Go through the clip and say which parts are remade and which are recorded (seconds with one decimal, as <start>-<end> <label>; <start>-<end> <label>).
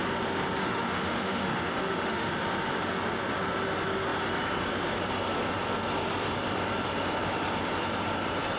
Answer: 0.0-0.6 recorded; 0.6-2.3 remade; 2.3-8.6 recorded